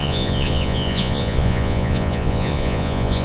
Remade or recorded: remade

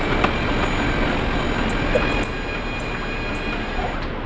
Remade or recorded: recorded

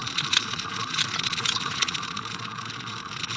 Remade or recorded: remade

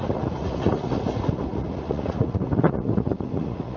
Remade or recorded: remade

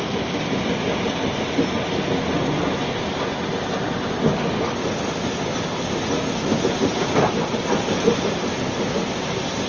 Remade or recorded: recorded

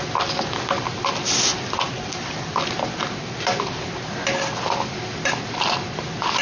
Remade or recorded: recorded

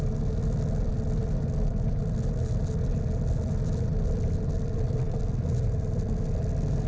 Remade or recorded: recorded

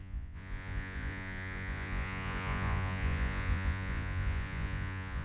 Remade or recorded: remade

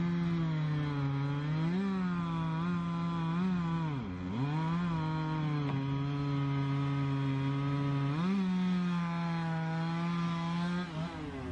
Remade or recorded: recorded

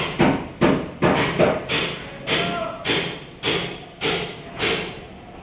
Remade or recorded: recorded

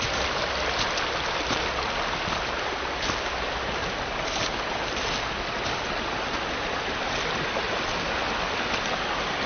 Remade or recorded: recorded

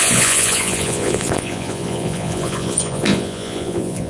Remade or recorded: remade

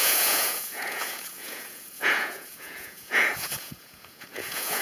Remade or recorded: remade